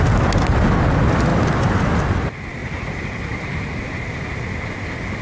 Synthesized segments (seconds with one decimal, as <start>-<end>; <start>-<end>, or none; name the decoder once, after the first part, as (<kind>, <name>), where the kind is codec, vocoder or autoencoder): 1.3-2.0 (vocoder, BigVGAN v2); 2.6-4.1